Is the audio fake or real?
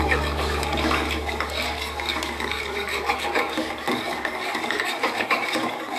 fake